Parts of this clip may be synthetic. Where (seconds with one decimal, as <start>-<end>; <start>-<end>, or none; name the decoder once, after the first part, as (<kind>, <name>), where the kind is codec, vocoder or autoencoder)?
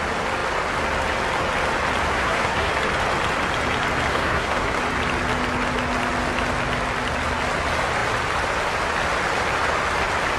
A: 2.1-2.7 (codec, SNAC); 4.1-4.8